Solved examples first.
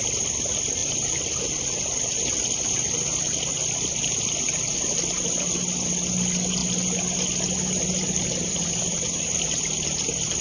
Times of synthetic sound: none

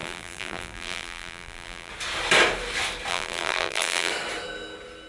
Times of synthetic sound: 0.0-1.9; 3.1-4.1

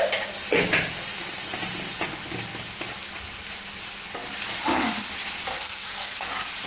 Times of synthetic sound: 5.5-6.3